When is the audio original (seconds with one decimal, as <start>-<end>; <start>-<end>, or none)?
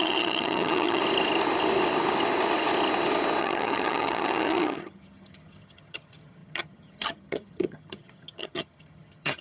1.0-3.4